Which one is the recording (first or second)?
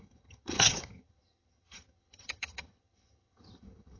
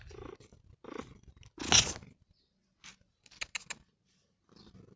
second